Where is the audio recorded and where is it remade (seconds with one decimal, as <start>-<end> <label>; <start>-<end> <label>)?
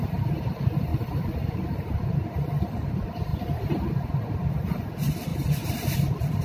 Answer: 0.0-6.4 remade